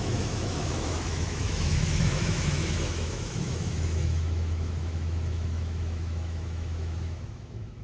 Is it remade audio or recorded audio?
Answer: remade